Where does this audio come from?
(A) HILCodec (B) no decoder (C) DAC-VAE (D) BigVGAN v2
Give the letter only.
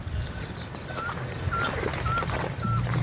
B